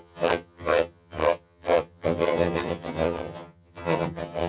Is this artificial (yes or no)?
yes